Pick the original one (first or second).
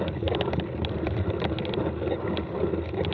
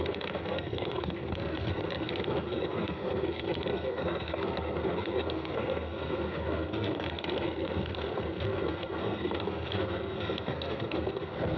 first